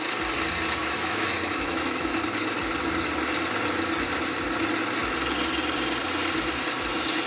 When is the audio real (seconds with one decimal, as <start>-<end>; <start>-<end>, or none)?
0.0-0.8; 2.1-7.3